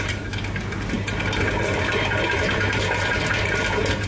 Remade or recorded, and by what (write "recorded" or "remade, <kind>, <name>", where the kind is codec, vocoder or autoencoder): recorded